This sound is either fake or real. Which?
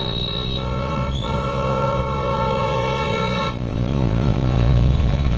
fake